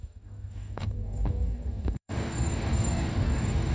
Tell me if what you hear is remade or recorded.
remade